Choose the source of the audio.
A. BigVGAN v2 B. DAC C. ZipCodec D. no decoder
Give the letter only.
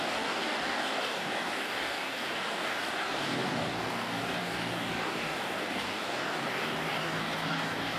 B